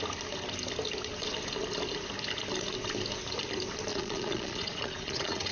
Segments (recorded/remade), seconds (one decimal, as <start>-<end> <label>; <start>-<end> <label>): 0.0-3.9 recorded; 3.9-5.5 remade